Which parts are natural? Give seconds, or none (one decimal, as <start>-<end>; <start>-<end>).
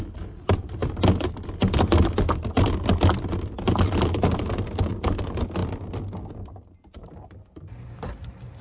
0.0-8.6